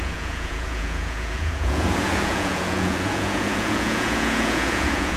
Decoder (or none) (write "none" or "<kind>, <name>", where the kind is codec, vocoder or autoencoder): vocoder, Vocos